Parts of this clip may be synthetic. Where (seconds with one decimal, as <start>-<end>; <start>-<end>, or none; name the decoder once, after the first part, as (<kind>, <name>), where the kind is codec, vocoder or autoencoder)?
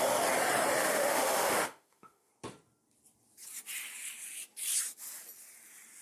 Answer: 0.8-2.3 (autoencoder, DAC-VAE)